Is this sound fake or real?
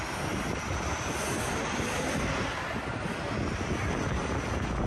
real